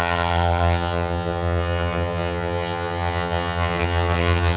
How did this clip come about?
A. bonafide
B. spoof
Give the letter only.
B